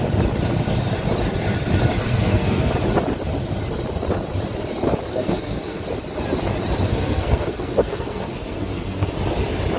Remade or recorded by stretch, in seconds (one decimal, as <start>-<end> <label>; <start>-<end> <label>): 0.0-2.0 recorded; 2.0-2.7 remade; 2.7-5.1 recorded; 5.1-5.8 remade; 5.8-6.9 recorded; 6.9-9.1 remade; 9.1-9.8 recorded